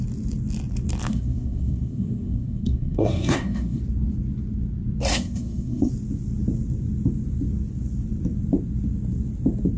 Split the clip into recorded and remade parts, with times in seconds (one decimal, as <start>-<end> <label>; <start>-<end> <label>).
0.0-1.1 recorded; 1.1-3.8 remade; 3.8-5.1 recorded; 5.1-5.9 remade; 5.9-9.8 recorded